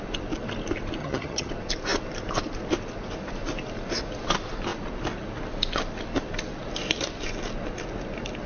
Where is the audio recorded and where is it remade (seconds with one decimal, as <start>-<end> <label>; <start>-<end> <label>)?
0.0-1.0 recorded; 1.0-1.5 remade; 1.5-8.5 recorded